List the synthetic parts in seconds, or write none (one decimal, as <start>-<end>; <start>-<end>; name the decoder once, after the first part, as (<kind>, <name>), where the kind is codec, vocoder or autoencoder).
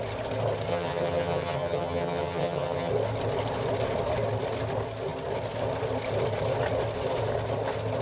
0.7-2.9 (vocoder, HiFi-GAN)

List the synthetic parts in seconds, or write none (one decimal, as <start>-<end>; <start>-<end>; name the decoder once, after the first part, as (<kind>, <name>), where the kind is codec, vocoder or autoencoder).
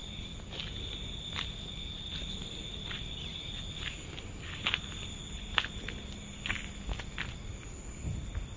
none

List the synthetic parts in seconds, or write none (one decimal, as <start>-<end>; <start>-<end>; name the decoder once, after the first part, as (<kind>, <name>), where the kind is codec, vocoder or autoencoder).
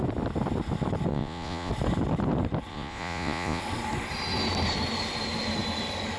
1.1-1.7 (vocoder, Vocos); 2.7-3.6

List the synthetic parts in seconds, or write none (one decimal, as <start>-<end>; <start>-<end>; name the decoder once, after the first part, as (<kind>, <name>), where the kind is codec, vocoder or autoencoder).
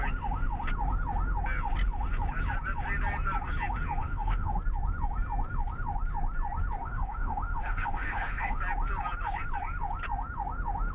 4.0-4.6 (autoencoder, DAC-VAE); 6.8-8.6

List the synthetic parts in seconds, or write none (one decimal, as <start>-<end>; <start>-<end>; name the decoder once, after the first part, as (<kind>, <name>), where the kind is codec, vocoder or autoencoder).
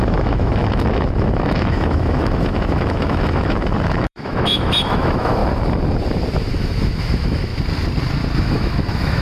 0.0-5.4 (autoencoder, DAC-VAE); 6.5-7.5; 8.4-9.2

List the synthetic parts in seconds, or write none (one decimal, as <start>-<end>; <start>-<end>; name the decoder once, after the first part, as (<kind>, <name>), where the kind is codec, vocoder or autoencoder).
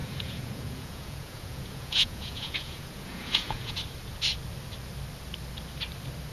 0.0-3.8 (vocoder, Vocos)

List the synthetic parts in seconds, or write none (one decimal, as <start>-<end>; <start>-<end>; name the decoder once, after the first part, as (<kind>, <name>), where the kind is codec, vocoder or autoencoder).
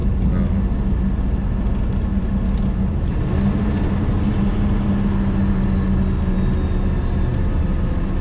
none